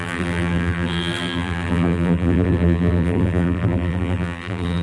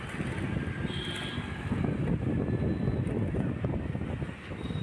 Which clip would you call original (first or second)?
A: second